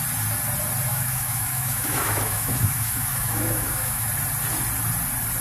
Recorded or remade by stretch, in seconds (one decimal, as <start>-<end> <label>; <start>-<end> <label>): 0.0-0.9 recorded; 0.9-4.1 remade; 4.1-5.4 recorded